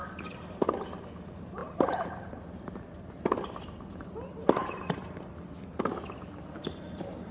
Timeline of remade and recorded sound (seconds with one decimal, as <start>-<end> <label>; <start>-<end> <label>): 0.0-7.3 recorded